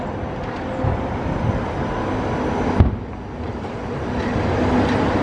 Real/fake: real